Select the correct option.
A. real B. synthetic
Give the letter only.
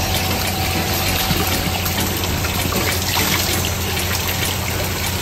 A